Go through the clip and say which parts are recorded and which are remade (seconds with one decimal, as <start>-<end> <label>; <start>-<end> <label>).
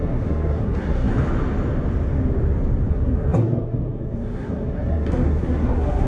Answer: 0.0-1.1 remade; 1.1-2.9 recorded; 2.9-6.1 remade